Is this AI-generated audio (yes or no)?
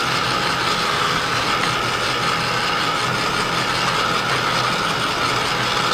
no